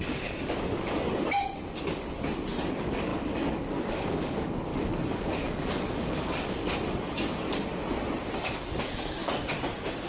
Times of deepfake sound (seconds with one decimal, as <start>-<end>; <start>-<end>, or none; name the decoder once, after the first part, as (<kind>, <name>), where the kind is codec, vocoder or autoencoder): 0.0-7.7 (codec, DAC); 8.4-9.2